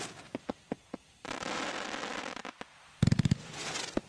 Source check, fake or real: real